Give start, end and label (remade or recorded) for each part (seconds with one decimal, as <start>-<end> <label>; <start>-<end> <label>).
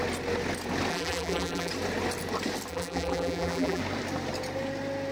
0.0-0.9 recorded; 0.9-1.7 remade; 1.7-2.7 recorded; 2.7-3.8 remade; 3.8-5.1 recorded